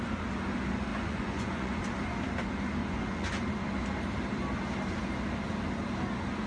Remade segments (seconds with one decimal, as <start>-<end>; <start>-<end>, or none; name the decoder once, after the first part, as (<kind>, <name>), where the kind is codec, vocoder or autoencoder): 0.9-1.8 (vocoder, Vocos); 2.8-3.3